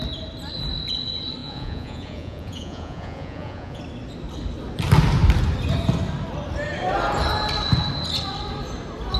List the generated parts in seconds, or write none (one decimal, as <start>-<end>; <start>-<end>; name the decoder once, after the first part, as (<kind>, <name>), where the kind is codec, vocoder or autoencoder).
1.4-3.8 (vocoder, Vocos)